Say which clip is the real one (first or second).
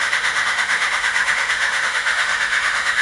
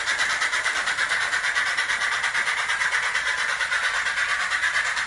second